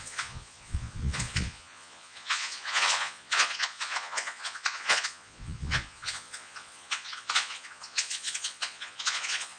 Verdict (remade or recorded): remade